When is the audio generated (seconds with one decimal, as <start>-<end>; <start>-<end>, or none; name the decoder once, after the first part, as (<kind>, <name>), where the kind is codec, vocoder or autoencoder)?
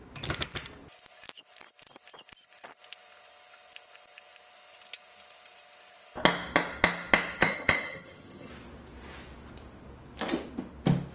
7.4-8.5 (vocoder, HiFi-GAN)